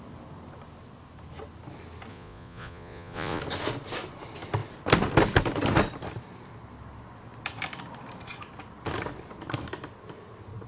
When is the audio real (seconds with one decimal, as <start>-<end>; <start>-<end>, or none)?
0.0-2.1; 3.4-10.7